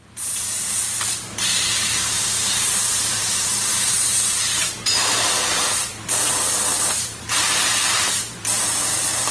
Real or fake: fake